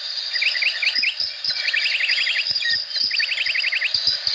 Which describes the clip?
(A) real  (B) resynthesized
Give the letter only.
A